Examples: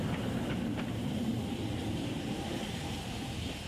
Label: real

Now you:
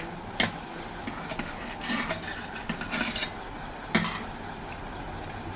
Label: real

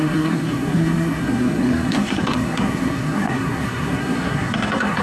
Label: fake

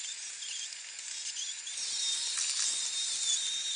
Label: real